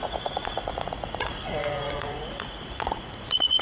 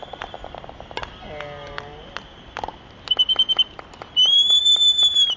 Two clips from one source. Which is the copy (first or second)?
first